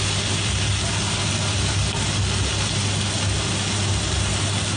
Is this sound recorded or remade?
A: recorded